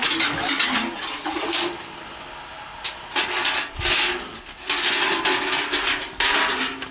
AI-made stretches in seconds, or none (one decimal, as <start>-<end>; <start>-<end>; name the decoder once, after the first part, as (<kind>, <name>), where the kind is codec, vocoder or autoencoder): none